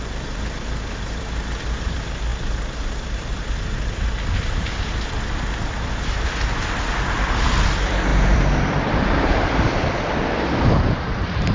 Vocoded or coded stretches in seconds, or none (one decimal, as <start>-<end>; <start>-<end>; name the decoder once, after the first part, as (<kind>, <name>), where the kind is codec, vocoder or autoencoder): 0.0-11.5 (vocoder, BigVGAN v2)

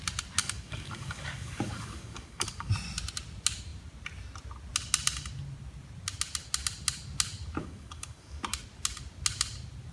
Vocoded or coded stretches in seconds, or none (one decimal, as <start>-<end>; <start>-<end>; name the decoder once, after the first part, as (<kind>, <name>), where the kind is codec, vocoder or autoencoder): 0.4-2.7 (codec, DAC); 7.6-8.4